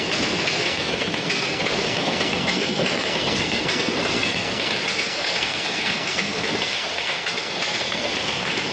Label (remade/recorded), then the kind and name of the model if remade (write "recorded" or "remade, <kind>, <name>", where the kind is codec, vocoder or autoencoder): remade, codec, SNAC